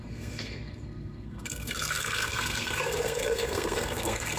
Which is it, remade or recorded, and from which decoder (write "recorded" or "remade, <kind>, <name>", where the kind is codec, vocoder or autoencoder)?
remade, codec, SNAC